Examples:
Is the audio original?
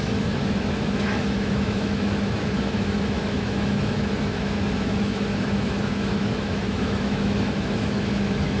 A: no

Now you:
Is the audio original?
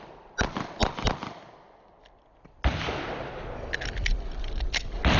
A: yes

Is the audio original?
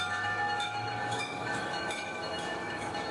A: no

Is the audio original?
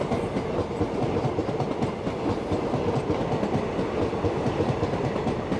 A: yes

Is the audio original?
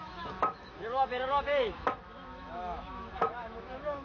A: no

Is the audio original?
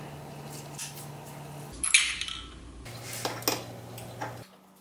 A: yes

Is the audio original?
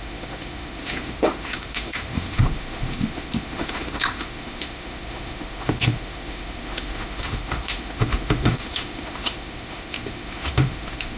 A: no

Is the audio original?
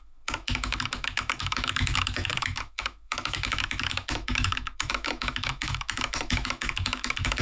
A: no